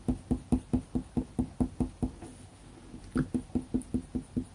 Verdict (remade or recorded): recorded